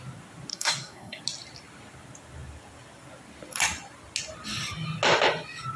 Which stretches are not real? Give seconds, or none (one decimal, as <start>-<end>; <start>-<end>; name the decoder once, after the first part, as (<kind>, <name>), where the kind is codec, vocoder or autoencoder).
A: 0.5-1.2 (codec, SNAC)